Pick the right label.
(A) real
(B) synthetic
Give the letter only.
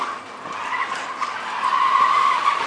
A